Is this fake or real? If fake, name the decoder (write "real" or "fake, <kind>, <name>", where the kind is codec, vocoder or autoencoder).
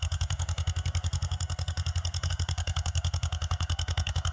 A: fake, codec, SNAC